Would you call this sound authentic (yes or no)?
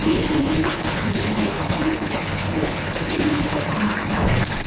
no